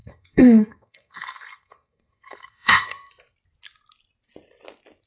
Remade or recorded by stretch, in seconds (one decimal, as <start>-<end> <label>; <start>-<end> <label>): 0.0-3.1 remade; 3.1-5.1 recorded